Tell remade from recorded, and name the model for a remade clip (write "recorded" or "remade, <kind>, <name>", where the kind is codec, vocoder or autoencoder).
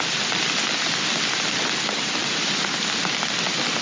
recorded